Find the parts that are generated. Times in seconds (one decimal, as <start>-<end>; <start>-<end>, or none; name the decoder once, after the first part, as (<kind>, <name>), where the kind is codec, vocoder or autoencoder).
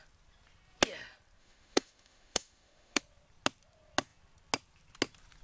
1.4-3.0 (autoencoder, DAC-VAE)